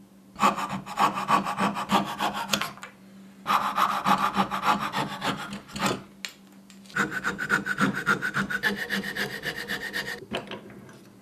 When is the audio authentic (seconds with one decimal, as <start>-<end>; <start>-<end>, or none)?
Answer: 0.0-11.2